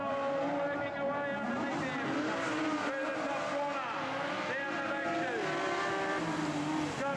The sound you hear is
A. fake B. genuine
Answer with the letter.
B